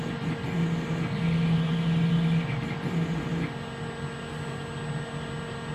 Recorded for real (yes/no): yes